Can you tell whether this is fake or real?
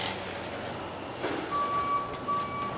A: real